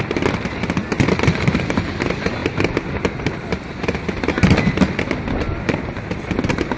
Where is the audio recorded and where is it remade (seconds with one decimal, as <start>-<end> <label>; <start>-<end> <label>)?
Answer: 0.0-6.8 recorded